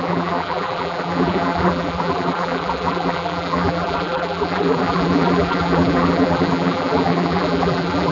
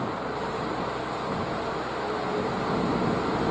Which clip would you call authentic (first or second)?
second